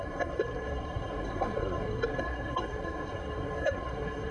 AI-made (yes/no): yes